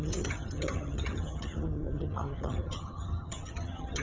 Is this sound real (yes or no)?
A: no